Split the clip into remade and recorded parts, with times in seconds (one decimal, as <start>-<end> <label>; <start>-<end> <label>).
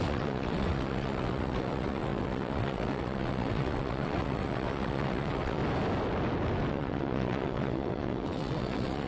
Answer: 0.0-5.6 remade; 5.6-6.7 recorded; 6.7-9.1 remade